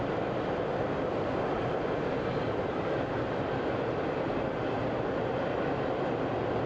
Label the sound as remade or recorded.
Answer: recorded